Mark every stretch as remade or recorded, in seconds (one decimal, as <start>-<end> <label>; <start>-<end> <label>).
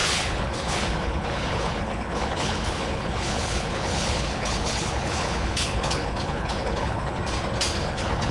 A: 0.0-7.2 remade; 7.2-7.8 recorded; 7.8-8.3 remade